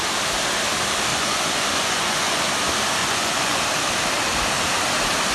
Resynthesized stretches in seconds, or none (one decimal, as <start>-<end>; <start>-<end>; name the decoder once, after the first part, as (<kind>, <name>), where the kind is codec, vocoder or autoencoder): 1.1-2.4 (vocoder, Vocos); 3.0-3.6